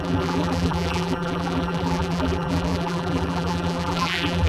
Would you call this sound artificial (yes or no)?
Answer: yes